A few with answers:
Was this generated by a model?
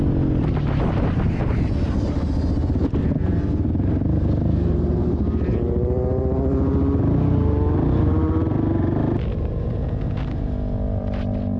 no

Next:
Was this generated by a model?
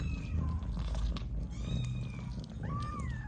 no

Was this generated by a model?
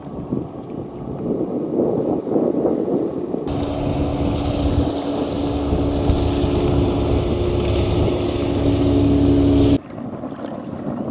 no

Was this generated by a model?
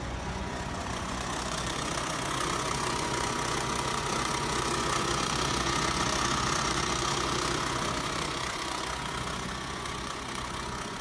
yes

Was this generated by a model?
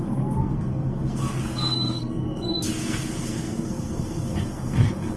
yes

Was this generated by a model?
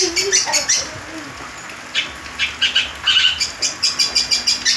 no